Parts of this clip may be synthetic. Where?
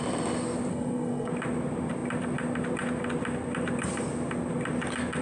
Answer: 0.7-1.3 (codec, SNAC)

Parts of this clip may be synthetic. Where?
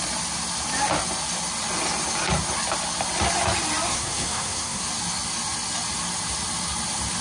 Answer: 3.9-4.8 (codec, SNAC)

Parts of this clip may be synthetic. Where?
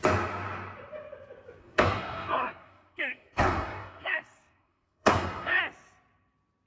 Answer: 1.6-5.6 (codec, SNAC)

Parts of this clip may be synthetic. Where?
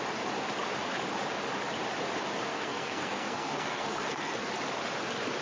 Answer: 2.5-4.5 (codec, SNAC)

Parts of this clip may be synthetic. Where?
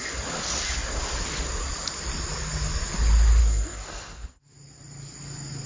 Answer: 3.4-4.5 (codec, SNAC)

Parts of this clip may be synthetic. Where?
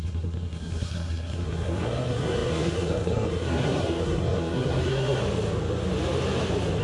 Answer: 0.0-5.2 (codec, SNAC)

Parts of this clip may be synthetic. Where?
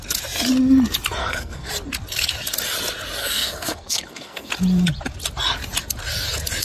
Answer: 1.2-1.7 (codec, SNAC); 3.2-4.5